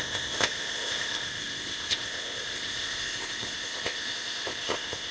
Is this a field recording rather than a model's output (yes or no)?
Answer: no